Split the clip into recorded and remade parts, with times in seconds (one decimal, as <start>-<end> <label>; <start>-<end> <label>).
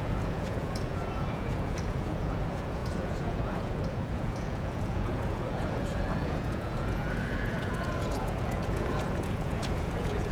0.0-10.3 remade